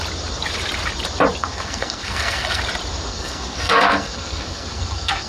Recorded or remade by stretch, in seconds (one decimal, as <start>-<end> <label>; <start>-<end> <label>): 0.0-1.4 recorded; 1.4-2.6 remade; 2.6-3.1 recorded; 3.1-5.3 remade